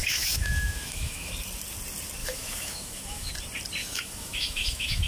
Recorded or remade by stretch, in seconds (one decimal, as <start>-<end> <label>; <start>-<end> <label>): 0.0-1.3 remade; 1.3-2.2 recorded; 2.2-3.3 remade; 3.3-3.8 recorded; 3.8-5.1 remade